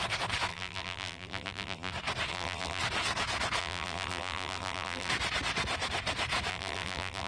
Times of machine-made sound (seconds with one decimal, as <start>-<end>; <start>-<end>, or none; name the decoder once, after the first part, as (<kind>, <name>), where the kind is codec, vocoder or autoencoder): 0.5-1.9 (vocoder, BigVGAN v2); 2.3-2.8; 3.6-5.1; 6.5-7.3